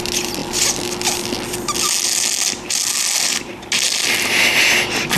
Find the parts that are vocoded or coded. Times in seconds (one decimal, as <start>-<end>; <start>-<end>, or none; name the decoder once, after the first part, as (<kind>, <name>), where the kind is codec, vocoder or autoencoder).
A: none

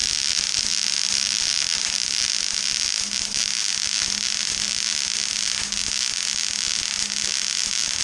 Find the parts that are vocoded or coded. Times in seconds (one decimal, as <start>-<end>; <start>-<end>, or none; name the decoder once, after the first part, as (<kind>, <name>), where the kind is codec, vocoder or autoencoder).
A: 0.0-2.3 (vocoder, BigVGAN v2)

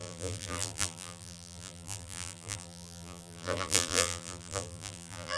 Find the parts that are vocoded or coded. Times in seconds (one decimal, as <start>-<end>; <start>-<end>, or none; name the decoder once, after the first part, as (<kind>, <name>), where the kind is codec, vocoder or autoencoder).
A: 0.0-5.4 (vocoder, BigVGAN v2)

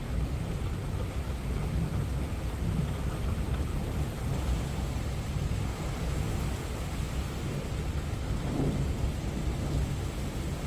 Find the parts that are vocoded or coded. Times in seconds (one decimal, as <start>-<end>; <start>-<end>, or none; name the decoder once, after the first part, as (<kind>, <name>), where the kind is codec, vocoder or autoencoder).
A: 3.7-4.3 (vocoder, BigVGAN v2)